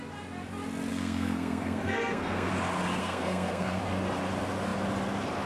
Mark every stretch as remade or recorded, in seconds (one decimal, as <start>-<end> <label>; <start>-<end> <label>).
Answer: 0.0-0.9 recorded; 0.9-2.5 remade; 2.5-3.0 recorded; 3.0-3.8 remade; 3.8-5.5 recorded